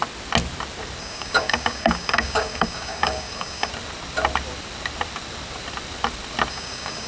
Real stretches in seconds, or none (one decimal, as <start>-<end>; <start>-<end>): 0.0-1.0; 3.7-6.5